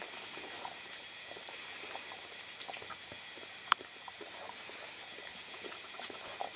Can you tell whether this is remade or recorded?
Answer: remade